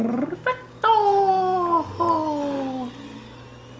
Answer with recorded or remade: recorded